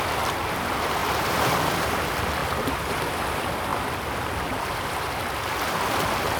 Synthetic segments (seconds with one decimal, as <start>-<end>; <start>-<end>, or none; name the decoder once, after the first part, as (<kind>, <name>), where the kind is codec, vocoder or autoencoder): 2.4-3.3 (vocoder, BigVGAN v2)